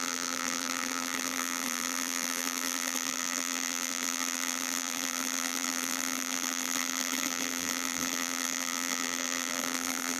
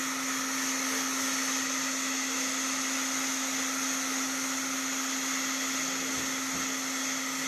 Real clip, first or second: second